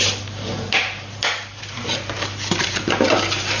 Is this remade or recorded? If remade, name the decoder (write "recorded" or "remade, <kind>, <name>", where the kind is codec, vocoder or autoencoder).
remade, vocoder, BigVGAN v2